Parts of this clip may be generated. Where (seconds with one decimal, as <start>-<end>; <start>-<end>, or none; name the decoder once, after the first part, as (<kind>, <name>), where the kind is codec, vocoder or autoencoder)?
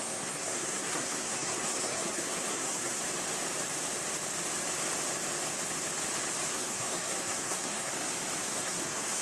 0.0-3.0 (codec, SNAC); 6.5-7.9; 8.4-9.2